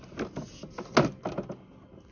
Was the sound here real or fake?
real